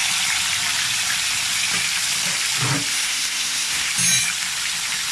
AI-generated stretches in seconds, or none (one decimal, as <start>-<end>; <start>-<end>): 2.9-3.9